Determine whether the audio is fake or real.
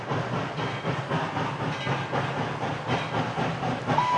real